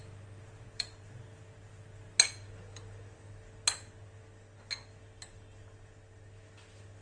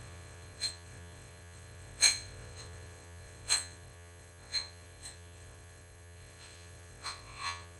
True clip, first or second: first